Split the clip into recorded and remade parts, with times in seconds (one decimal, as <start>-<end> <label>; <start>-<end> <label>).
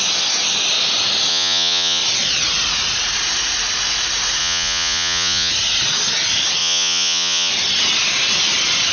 0.0-1.3 recorded; 1.3-2.0 remade; 2.0-4.4 recorded; 4.4-5.5 remade; 5.5-6.6 recorded; 6.6-7.5 remade; 7.5-8.9 recorded